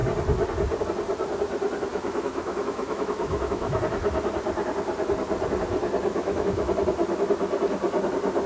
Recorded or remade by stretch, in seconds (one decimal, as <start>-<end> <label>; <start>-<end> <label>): 0.0-1.9 recorded; 1.9-3.8 remade; 3.8-6.1 recorded; 6.1-6.7 remade; 6.7-8.5 recorded